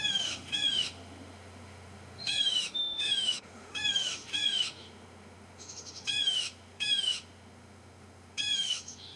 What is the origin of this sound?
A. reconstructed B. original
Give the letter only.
A